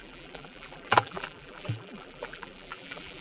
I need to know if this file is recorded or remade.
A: remade